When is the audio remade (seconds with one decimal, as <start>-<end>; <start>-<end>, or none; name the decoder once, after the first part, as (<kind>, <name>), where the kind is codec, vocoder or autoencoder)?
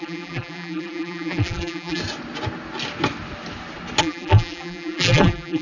0.0-2.0 (vocoder, BigVGAN v2); 4.0-5.6